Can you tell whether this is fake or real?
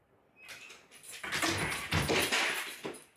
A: real